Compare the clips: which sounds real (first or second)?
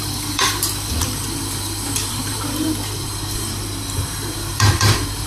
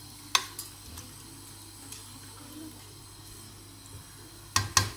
second